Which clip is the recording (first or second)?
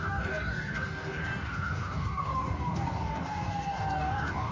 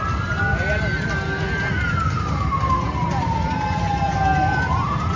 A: second